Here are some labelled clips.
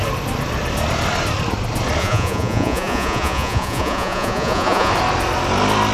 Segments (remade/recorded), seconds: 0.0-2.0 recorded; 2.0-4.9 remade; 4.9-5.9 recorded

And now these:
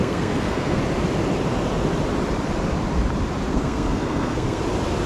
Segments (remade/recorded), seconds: 0.0-0.8 remade; 0.8-3.5 recorded; 3.5-4.6 remade; 4.6-5.1 recorded

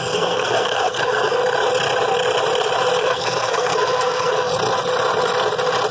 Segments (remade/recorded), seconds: 0.0-1.4 remade; 1.4-3.0 recorded; 3.0-4.5 remade; 4.5-5.9 recorded

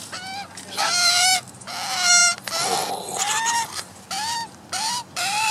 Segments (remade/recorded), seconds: 0.0-5.5 recorded

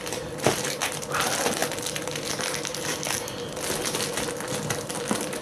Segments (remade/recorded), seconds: 0.0-5.4 recorded

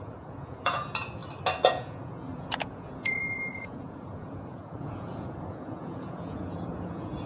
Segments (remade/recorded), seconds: 0.0-1.2 remade; 1.2-1.7 recorded; 1.7-7.3 remade

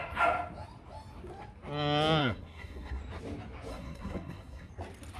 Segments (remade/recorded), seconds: 0.0-2.2 recorded; 2.2-3.0 remade; 3.0-3.7 recorded; 3.7-4.7 remade; 4.7-5.2 recorded

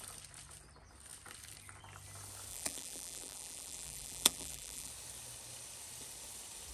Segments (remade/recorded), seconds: 0.0-2.5 recorded; 2.5-4.9 remade; 4.9-6.7 recorded